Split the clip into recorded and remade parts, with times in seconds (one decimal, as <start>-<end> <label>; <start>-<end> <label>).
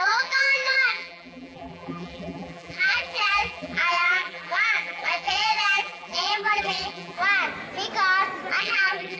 0.0-7.2 remade; 7.2-8.6 recorded; 8.6-9.2 remade